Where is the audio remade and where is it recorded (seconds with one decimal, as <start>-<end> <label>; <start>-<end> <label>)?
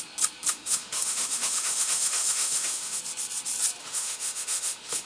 0.0-0.5 recorded; 0.5-3.0 remade; 3.0-3.8 recorded; 3.8-5.1 remade